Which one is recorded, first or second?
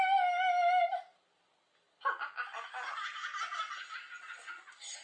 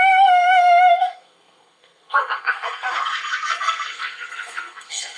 first